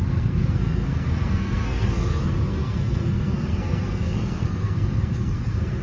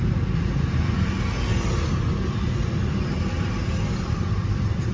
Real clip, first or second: second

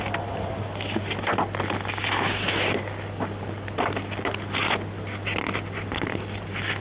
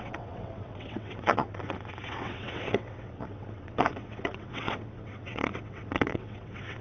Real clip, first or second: first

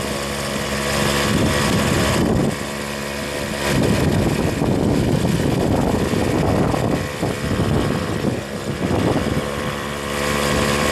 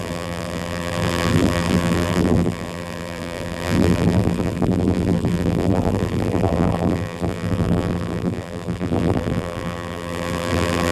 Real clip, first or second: first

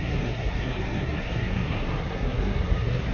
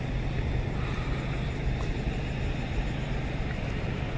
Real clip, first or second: second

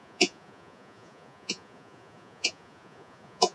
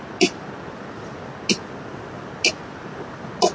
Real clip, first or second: second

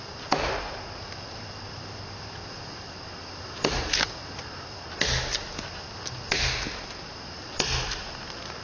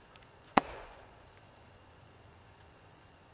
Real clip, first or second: first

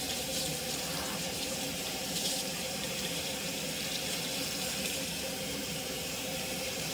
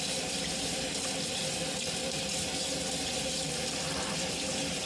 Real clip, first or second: second